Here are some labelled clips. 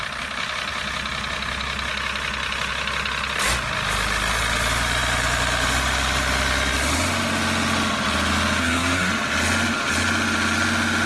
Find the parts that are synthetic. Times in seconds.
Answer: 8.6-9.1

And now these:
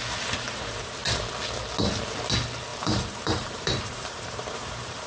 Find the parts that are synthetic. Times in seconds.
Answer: 2.7-5.1

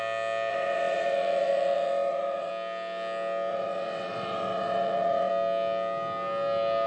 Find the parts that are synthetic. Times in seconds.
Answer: 0.5-2.5; 3.5-5.3

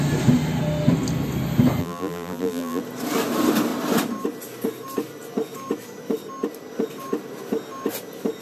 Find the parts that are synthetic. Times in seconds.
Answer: 1.8-2.8

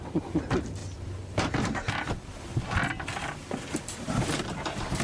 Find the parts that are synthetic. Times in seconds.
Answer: 0.0-0.8; 3.8-5.0

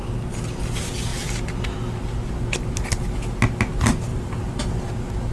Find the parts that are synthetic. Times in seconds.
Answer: 4.1-4.8